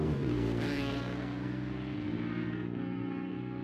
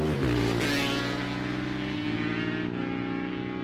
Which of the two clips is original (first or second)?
second